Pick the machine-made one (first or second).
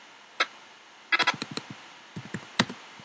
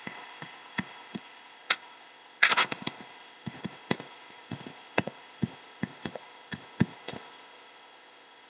second